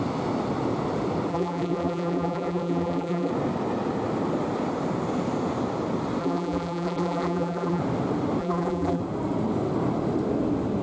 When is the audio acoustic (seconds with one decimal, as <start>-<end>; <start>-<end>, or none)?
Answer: 0.0-1.3; 3.3-6.2; 7.8-8.4; 9.0-10.8